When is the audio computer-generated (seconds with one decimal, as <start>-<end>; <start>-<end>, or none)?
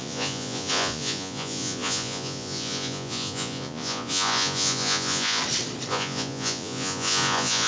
0.0-5.4; 5.9-7.7